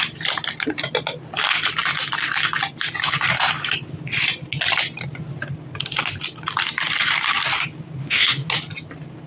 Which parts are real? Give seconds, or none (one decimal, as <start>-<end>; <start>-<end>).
0.0-8.0; 8.5-9.3